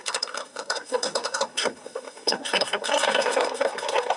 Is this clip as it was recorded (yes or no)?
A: no